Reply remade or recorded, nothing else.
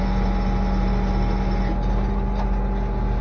recorded